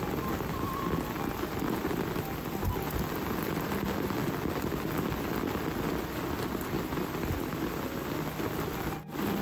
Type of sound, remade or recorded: recorded